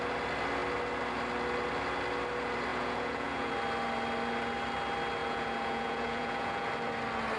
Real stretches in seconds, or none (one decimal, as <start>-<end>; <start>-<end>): 0.0-2.7; 3.5-5.2; 6.7-7.4